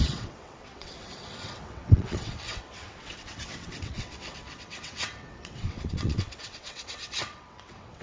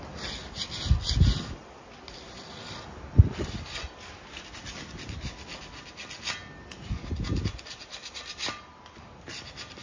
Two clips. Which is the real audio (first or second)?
second